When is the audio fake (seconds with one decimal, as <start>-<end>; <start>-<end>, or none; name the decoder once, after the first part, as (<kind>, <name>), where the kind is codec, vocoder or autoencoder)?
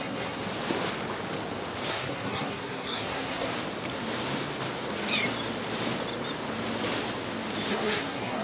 0.0-0.4 (codec, SNAC); 1.9-3.5; 7.7-8.4